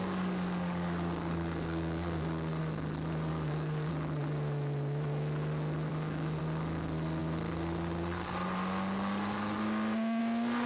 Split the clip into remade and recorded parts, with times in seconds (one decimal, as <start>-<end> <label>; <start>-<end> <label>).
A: 0.0-2.6 remade; 2.6-3.3 recorded; 3.3-3.9 remade; 3.9-5.9 recorded; 5.9-6.4 remade; 6.4-10.7 recorded